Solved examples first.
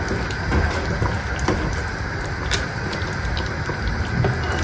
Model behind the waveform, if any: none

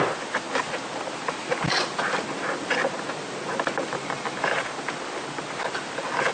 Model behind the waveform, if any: none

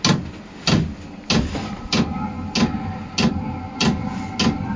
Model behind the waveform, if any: none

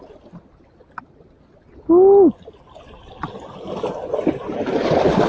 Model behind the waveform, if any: none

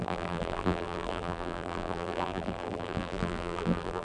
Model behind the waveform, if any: vocoder, BigVGAN v2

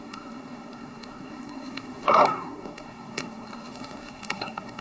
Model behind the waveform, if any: codec, SNAC